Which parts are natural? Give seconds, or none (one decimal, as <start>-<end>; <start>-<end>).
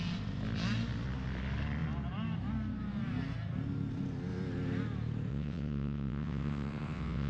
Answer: 0.0-5.3